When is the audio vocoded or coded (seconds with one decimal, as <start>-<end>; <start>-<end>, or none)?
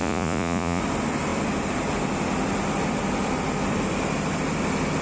0.0-0.8